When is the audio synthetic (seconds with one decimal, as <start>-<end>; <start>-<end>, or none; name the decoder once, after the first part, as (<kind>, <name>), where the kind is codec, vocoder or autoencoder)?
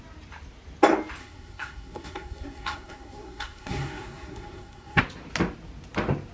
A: 1.2-5.0 (codec, SNAC)